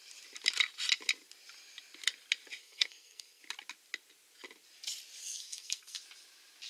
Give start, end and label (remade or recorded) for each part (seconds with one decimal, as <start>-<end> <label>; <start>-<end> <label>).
0.0-2.6 recorded; 2.6-3.4 remade; 3.4-5.2 recorded; 5.2-6.0 remade; 6.0-6.7 recorded